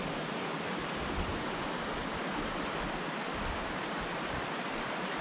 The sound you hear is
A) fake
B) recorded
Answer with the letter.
B